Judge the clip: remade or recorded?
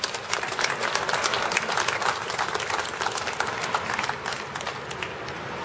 recorded